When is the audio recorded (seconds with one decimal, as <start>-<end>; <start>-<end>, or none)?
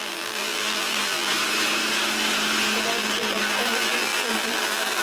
1.3-2.8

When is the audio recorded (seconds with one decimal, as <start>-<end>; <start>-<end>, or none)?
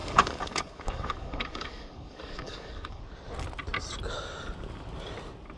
3.0-5.6